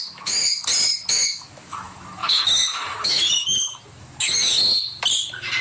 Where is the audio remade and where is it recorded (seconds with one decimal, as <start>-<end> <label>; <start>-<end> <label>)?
0.0-0.5 remade; 0.5-1.1 recorded; 1.1-3.5 remade; 3.5-4.0 recorded; 4.0-4.6 remade; 4.6-5.6 recorded